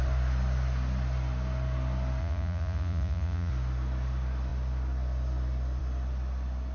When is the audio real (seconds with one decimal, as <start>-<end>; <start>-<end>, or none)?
0.0-2.2; 3.5-6.7